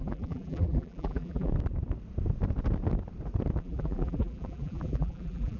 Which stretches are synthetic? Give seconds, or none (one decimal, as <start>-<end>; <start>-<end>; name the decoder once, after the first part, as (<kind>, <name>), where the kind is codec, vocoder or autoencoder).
0.0-1.5 (vocoder, BigVGAN v2); 3.6-5.6